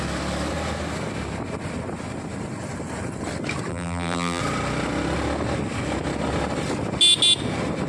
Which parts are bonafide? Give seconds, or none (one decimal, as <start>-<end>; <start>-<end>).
0.0-3.7; 4.4-7.9